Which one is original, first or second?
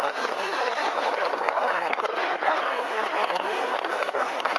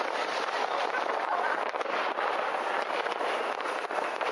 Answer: second